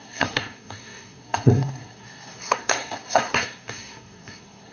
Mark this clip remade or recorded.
remade